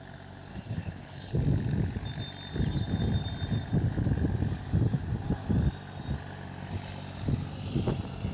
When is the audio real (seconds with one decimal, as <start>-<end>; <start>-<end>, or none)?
0.0-0.5; 1.4-8.3

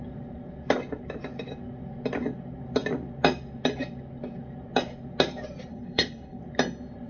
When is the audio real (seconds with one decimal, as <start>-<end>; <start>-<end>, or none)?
0.0-5.7; 6.4-7.1

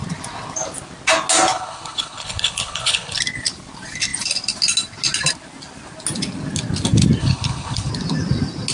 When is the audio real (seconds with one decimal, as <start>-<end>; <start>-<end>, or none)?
0.0-1.5; 3.2-7.2; 7.9-8.7

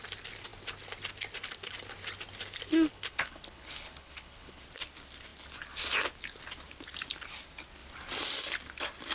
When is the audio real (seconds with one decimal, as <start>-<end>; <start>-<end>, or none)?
0.0-2.9; 4.6-9.1

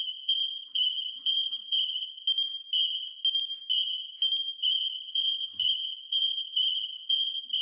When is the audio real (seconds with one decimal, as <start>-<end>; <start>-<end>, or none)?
2.2-4.6

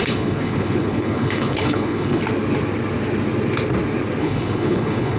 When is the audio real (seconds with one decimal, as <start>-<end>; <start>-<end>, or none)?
2.2-4.2